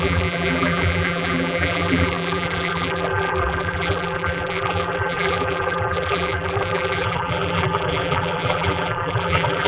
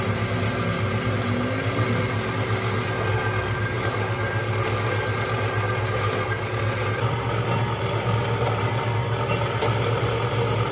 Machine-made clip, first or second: first